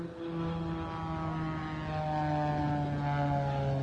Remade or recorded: recorded